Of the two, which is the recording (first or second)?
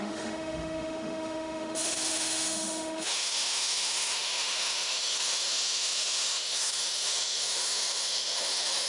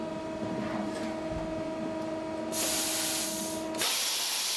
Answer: second